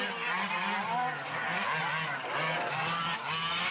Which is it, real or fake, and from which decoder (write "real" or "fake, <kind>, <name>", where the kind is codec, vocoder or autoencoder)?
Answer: real